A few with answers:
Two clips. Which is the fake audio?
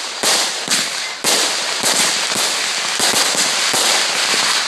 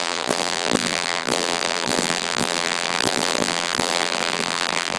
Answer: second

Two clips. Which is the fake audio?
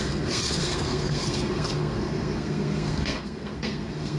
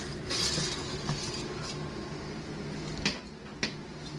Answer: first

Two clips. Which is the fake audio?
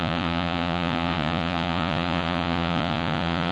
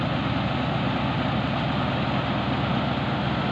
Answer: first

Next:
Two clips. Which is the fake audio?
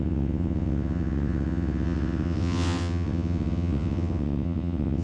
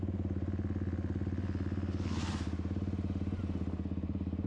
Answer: first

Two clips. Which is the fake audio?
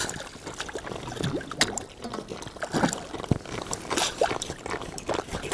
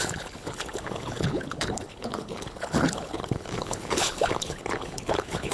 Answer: second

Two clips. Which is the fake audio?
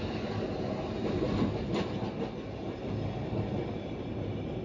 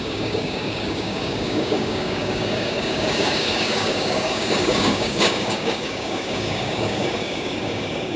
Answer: second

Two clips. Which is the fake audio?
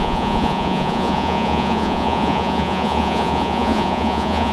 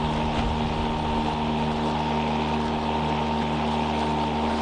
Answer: first